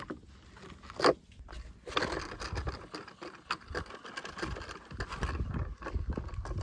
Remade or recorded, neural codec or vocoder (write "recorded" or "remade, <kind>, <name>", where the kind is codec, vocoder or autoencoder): recorded